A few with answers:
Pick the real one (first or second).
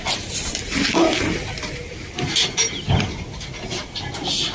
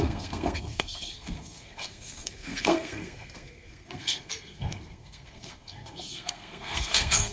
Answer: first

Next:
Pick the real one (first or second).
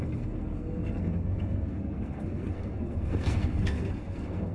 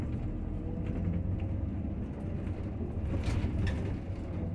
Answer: second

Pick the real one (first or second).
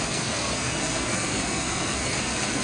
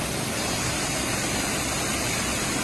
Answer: second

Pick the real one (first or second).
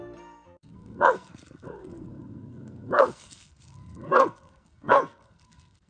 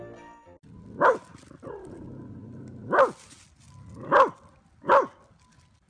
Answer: second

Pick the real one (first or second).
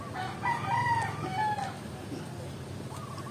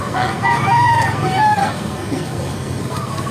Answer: first